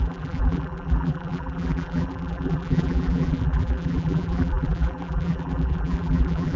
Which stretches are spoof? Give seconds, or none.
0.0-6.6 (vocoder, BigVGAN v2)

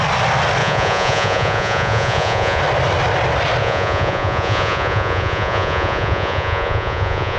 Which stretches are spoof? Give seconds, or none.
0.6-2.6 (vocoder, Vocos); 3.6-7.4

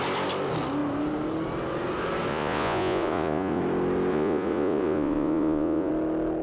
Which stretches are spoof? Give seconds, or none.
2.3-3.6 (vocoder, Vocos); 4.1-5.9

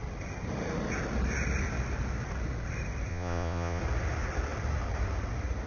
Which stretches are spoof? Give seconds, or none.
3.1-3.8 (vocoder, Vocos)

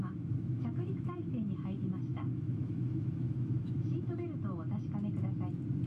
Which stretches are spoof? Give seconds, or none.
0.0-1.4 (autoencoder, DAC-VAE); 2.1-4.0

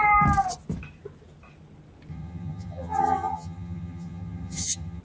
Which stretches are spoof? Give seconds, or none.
2.1-5.0 (vocoder, HiFi-GAN)

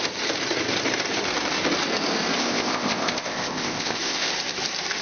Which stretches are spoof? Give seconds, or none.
2.4-4.3 (codec, ZipCodec)